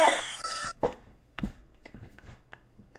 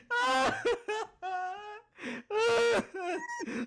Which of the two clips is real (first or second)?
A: second